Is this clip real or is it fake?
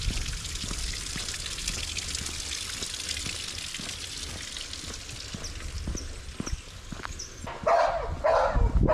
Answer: real